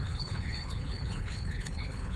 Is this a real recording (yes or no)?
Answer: no